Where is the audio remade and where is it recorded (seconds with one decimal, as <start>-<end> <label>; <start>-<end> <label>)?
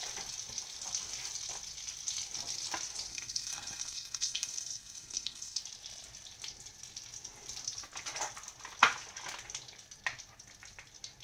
0.0-3.1 recorded; 3.1-5.6 remade; 5.6-11.2 recorded